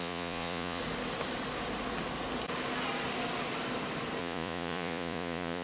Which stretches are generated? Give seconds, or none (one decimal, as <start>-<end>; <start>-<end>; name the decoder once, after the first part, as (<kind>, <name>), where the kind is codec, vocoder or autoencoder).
0.0-0.8 (vocoder, Vocos); 4.2-5.6